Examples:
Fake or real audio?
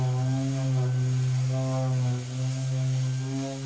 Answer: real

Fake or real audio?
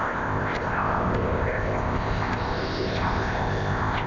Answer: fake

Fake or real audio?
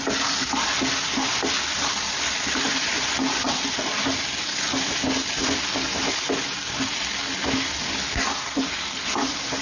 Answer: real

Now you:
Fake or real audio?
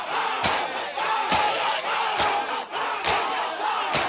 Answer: real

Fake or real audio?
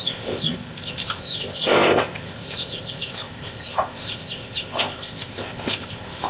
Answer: fake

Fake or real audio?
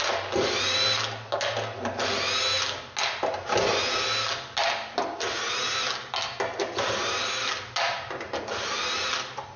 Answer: real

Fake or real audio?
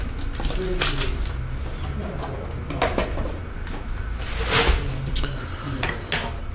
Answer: real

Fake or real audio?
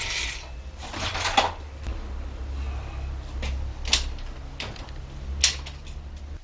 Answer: real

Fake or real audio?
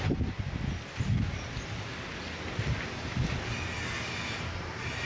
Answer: real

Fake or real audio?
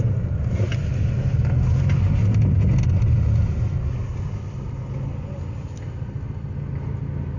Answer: real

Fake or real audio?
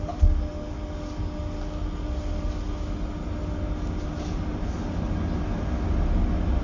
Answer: real